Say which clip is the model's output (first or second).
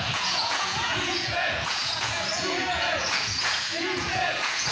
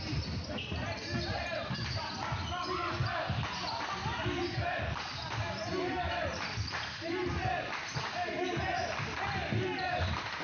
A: first